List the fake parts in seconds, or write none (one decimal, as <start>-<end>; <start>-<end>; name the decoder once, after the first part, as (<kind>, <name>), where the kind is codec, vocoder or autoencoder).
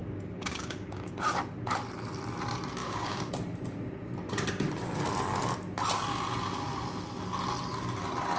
0.0-1.2 (codec, DAC); 2.8-3.3